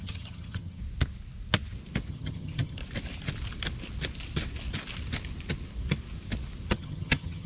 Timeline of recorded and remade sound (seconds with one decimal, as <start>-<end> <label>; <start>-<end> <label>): 0.0-0.8 remade; 0.8-2.1 recorded; 2.1-2.8 remade; 2.8-6.7 recorded; 6.7-7.5 remade